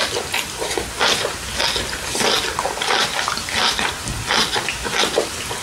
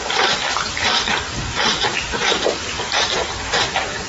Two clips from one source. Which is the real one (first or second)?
first